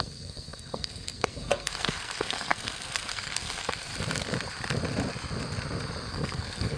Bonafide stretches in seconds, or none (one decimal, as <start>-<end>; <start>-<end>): 3.9-6.1